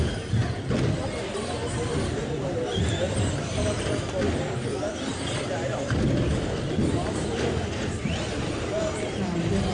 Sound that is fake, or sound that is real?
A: real